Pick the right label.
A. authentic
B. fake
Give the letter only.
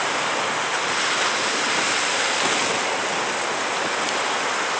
A